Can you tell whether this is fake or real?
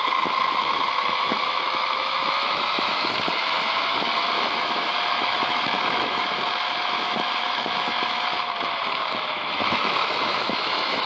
fake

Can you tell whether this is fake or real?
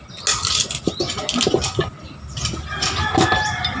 real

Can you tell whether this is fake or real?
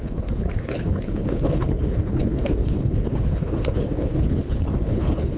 fake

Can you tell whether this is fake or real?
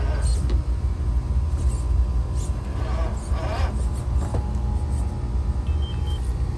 real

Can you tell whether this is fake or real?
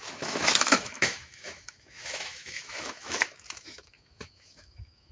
fake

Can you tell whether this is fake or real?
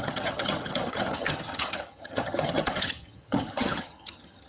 fake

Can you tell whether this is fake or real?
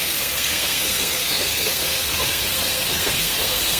fake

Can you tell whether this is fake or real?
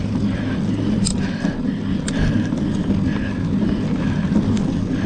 real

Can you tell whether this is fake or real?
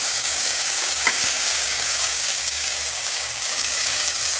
fake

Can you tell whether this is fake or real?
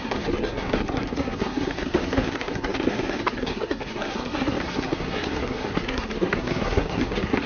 fake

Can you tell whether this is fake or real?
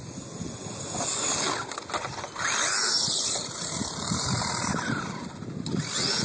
real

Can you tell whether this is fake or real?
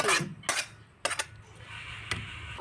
real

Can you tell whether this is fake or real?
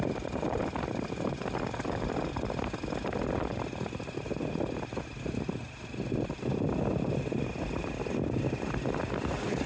real